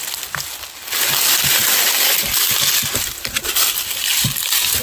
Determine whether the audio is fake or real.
real